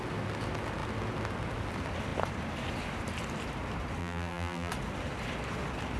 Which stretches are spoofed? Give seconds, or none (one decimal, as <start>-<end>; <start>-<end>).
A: 4.0-4.7